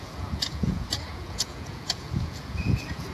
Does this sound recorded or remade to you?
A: remade